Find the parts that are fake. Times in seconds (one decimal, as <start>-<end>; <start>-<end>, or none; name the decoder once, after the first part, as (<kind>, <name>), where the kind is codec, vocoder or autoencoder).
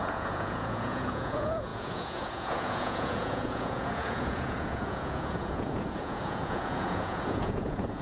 0.0-8.0 (vocoder, Vocos)